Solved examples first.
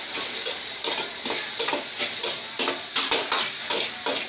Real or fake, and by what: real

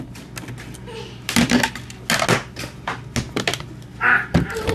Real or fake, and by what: real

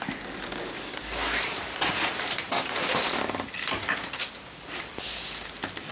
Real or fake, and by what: real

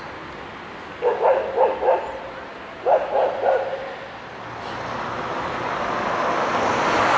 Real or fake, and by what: real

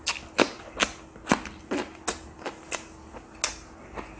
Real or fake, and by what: real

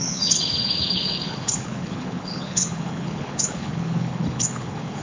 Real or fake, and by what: fake, codec, HILCodec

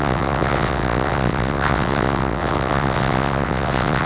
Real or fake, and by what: fake, vocoder, WaveNeXt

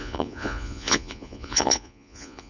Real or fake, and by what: fake, vocoder, Vocos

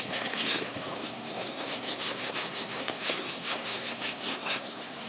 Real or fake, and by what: fake, codec, SNAC